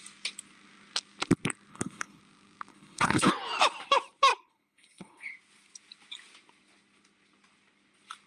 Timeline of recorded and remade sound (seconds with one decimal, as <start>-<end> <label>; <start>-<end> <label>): 0.0-1.7 recorded; 1.7-2.2 remade; 2.2-2.7 recorded; 2.7-3.3 remade; 3.3-4.3 recorded; 4.3-5.3 remade; 5.3-8.3 recorded